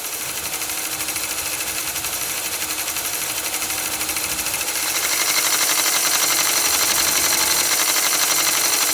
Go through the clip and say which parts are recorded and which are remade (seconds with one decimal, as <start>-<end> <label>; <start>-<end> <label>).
0.0-8.9 recorded